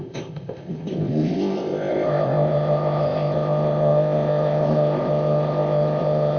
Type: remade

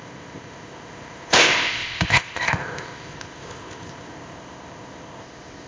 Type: remade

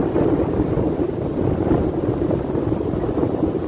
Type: recorded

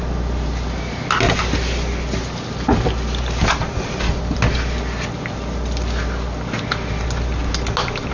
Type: recorded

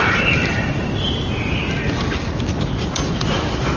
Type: recorded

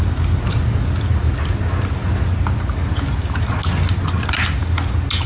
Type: recorded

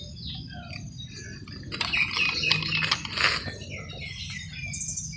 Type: recorded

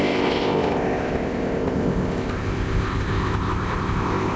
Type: remade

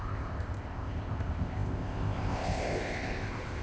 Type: remade